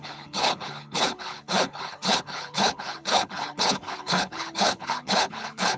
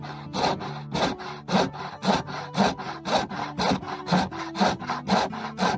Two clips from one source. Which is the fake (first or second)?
first